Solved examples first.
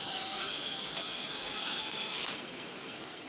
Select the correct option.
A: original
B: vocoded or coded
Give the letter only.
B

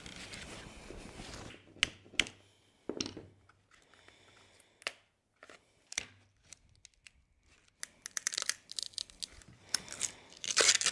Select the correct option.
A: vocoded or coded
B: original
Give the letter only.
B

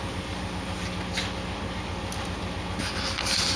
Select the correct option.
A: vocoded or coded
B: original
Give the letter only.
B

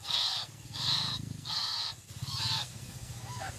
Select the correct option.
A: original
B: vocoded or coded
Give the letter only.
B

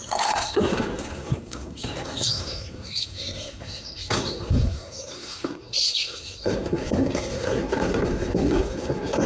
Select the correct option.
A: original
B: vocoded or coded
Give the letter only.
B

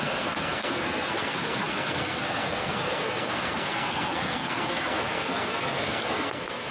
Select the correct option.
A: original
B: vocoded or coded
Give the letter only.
B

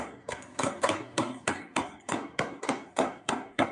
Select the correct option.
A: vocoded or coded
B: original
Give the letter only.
A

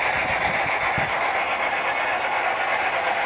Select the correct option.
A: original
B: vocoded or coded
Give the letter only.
A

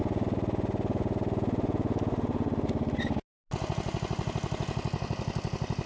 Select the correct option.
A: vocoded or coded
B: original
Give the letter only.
B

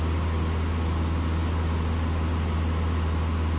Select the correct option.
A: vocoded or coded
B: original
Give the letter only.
B